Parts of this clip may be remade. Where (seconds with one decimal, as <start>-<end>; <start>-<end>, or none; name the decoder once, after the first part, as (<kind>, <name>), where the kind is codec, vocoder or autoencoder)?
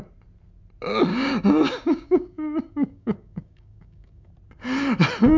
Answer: 1.1-4.3 (codec, DAC)